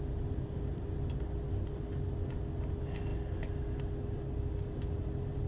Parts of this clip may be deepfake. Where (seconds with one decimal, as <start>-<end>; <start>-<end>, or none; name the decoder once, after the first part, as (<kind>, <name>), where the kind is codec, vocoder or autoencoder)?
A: none